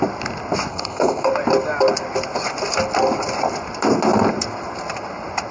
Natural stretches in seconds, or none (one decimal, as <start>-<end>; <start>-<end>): 0.0-0.7; 1.3-5.5